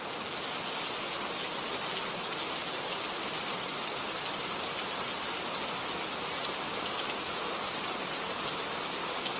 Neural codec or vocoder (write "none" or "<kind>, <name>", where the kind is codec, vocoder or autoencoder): none